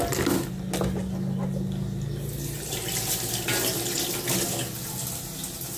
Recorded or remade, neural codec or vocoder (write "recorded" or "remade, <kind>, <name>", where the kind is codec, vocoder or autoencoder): recorded